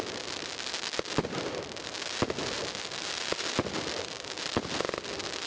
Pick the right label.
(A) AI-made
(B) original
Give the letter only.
A